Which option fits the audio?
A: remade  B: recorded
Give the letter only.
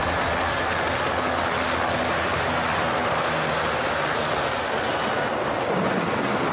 B